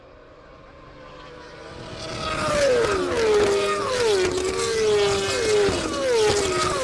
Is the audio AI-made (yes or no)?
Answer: no